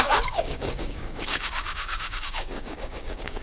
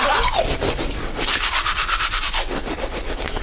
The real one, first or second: second